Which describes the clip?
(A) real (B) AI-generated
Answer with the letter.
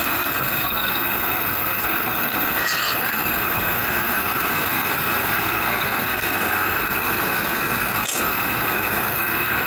B